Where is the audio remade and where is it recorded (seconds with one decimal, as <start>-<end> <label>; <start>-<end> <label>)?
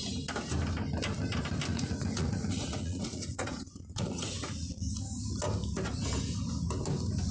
0.0-1.7 recorded; 1.7-4.7 remade; 4.7-7.3 recorded